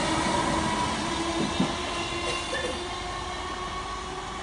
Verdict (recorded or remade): recorded